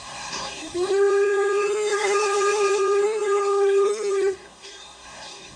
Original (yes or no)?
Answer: no